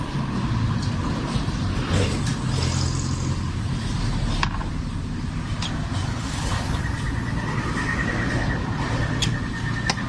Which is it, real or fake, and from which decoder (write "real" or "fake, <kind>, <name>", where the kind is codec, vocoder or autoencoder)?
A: real